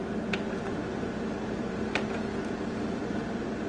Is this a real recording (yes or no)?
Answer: yes